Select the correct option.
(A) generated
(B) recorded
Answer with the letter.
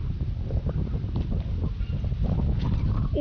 B